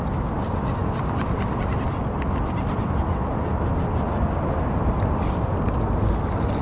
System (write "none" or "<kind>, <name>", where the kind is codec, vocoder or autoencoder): none